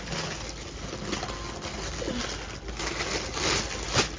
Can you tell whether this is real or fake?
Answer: real